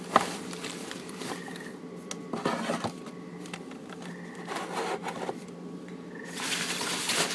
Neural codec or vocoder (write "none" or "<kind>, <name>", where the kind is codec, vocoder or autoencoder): none